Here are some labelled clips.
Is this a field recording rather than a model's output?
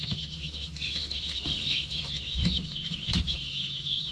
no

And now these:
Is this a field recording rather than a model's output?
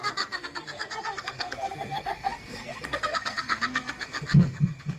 no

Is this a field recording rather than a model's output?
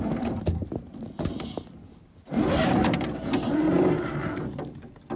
yes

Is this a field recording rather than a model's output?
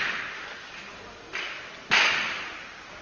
yes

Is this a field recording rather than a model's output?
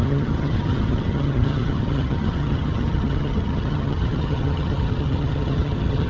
no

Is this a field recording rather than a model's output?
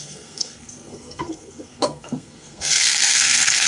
no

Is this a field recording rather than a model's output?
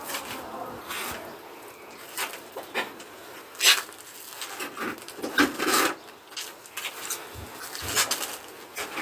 yes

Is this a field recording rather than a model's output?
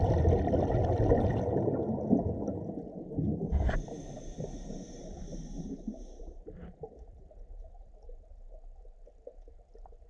yes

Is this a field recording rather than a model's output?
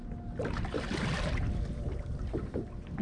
no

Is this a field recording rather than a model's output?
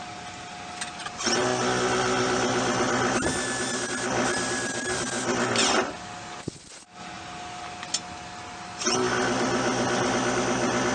yes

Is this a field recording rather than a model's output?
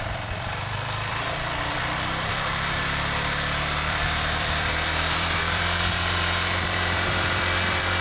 no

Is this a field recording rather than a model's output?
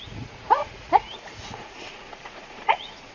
no